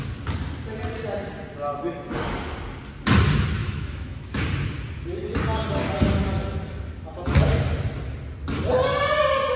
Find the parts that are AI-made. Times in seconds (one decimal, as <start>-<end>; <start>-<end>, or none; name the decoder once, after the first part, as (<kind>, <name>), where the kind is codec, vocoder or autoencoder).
3.6-4.4 (autoencoder, DAC-VAE)